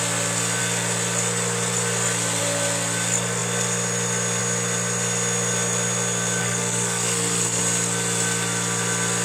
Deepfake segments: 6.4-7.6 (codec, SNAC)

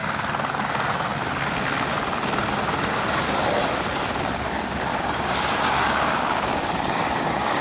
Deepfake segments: 4.9-7.6 (codec, DAC)